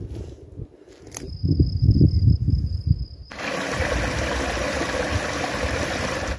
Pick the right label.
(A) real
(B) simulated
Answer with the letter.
A